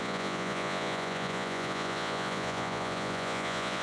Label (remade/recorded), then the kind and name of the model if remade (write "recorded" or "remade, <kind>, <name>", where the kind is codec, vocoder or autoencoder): remade, vocoder, Vocos